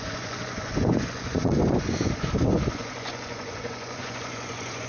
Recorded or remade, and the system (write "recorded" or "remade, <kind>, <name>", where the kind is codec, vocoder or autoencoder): remade, vocoder, Vocos